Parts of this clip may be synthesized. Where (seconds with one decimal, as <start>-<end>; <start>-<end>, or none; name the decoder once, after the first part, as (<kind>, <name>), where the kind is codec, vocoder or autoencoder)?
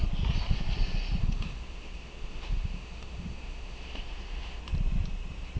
1.2-4.6 (autoencoder, DAC-VAE)